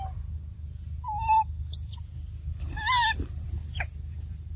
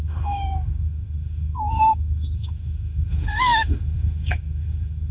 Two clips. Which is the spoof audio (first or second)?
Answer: second